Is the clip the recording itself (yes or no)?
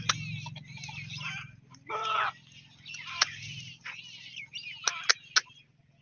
yes